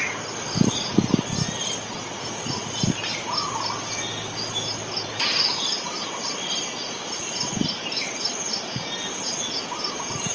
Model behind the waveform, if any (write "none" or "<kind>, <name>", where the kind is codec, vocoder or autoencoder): none